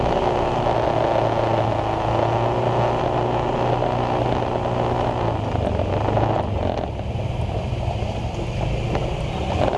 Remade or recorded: recorded